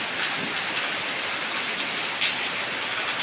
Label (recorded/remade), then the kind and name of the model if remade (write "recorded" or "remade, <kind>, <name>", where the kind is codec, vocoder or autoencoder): remade, vocoder, BigVGAN v2